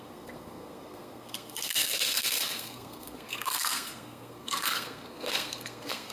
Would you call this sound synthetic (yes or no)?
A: yes